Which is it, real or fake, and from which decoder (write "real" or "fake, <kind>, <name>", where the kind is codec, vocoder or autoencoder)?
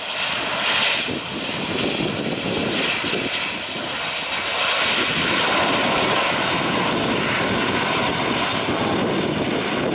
real